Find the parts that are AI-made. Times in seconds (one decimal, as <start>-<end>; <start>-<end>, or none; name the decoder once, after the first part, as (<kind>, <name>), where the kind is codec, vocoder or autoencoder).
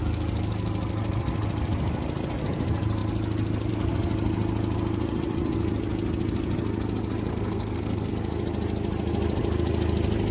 7.3-8.1 (codec, SNAC)